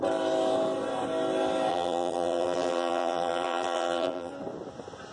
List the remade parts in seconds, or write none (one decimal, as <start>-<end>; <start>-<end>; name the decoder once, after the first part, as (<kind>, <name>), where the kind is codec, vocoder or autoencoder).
1.7-4.3 (vocoder, BigVGAN v2)